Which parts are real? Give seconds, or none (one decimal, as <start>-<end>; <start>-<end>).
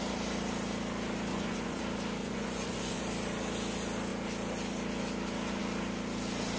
0.0-1.3; 1.8-2.2; 3.0-6.6